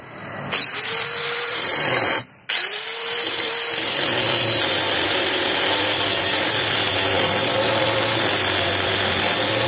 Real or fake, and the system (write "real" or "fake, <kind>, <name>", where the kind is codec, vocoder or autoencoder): real